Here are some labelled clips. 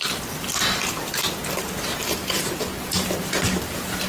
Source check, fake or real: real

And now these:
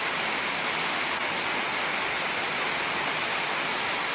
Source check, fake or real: real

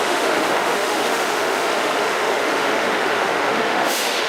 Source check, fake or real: fake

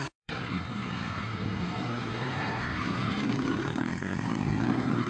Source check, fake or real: fake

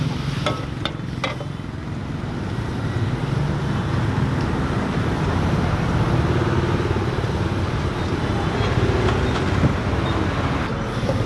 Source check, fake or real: real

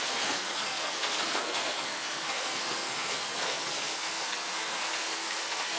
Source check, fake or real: fake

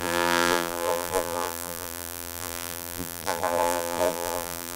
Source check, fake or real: fake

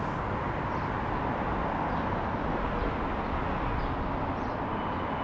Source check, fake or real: real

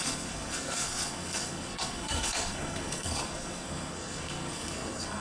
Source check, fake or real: fake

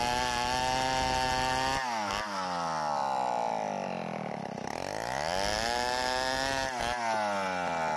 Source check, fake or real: real